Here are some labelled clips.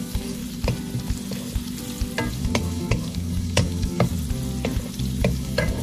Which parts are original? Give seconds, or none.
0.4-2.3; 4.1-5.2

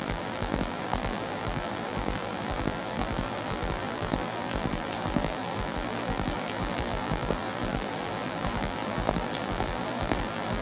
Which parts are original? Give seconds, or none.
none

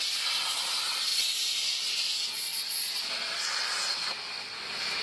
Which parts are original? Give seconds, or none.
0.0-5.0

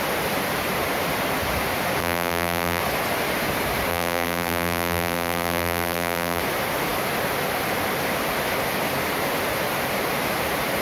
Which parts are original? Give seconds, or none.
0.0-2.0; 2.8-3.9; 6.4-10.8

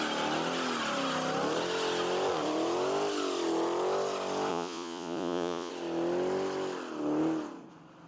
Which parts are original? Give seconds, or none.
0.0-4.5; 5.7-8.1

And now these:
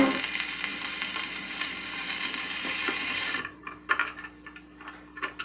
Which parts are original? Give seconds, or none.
0.0-0.7; 3.9-5.4

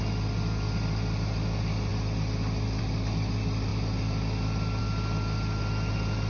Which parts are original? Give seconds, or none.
0.0-6.3

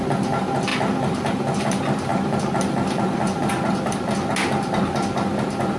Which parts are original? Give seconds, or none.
0.0-5.8